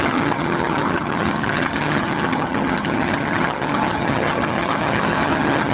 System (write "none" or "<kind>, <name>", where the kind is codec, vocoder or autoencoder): vocoder, HiFi-GAN